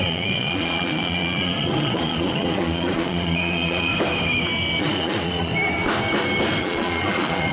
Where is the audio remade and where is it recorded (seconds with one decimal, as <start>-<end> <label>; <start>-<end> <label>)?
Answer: 0.0-3.9 remade; 3.9-4.8 recorded; 4.8-5.5 remade; 5.5-6.6 recorded; 6.6-7.5 remade